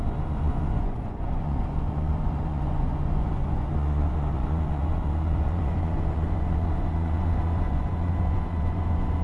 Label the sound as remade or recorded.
remade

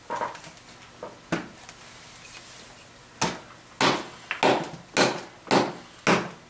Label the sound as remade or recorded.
recorded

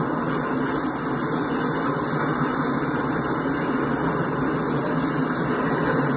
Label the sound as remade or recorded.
recorded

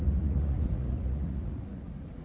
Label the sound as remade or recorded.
remade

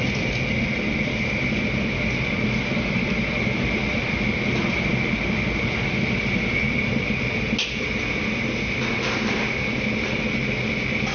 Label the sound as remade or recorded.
recorded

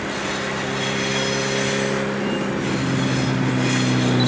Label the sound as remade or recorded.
recorded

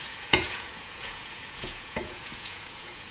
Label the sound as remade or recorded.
remade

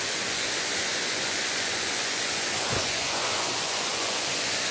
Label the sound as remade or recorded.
remade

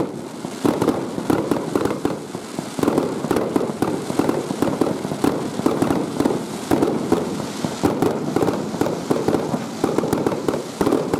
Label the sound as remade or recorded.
recorded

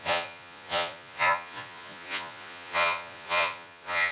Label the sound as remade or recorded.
remade